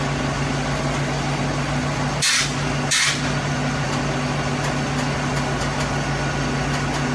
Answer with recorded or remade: recorded